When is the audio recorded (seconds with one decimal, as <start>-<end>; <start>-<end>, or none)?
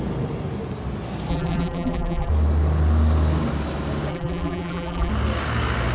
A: 0.0-1.3; 2.3-4.1; 5.1-5.9